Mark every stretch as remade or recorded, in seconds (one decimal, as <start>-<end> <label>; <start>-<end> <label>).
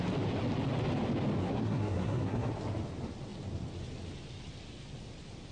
0.0-1.4 recorded; 1.4-2.5 remade; 2.5-5.5 recorded